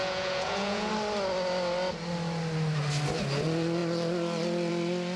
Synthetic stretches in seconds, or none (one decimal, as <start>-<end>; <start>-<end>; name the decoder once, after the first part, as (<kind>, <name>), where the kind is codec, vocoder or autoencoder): 0.0-0.9 (vocoder, Vocos)